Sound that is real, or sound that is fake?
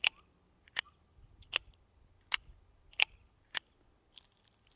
real